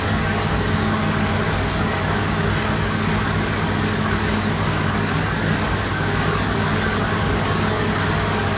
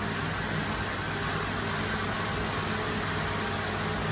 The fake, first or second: first